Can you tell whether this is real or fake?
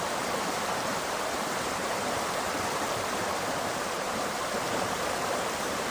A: fake